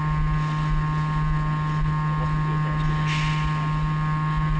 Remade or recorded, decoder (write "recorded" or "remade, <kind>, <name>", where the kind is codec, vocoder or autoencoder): recorded